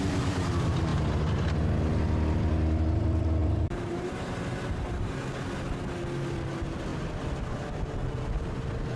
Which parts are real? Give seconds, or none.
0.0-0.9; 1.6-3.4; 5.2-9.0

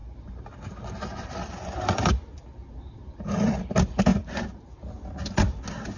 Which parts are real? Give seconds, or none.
3.6-4.1; 4.8-6.0